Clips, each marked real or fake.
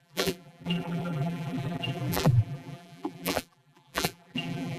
fake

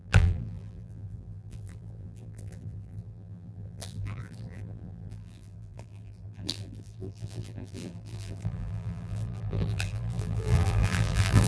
fake